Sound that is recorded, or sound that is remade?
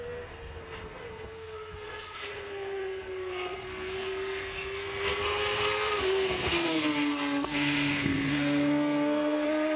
remade